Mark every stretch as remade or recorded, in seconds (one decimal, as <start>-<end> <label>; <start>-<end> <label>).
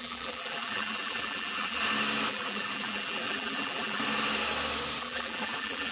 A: 0.0-1.8 remade; 1.8-2.3 recorded; 2.3-4.0 remade; 4.0-5.0 recorded; 5.0-5.9 remade